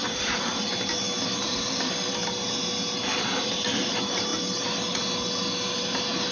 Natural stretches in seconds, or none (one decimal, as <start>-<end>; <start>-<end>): 1.9-6.3